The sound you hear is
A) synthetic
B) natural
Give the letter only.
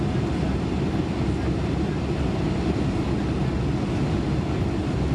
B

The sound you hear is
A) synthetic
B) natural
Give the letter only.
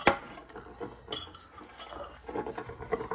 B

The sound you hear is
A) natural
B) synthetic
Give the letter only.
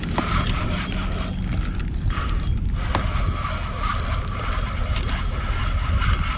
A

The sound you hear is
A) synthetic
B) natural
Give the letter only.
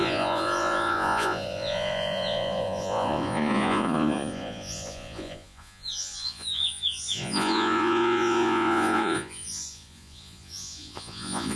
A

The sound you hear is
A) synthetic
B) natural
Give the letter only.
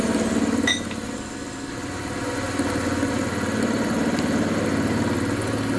B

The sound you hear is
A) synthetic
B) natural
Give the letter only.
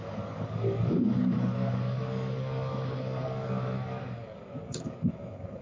A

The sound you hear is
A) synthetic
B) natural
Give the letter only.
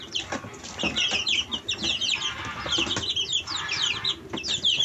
B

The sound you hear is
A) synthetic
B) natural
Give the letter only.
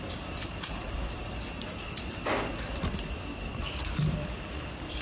A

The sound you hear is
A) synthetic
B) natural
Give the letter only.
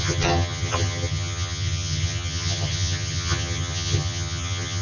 A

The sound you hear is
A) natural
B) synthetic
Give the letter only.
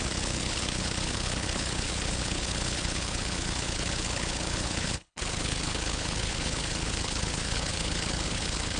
B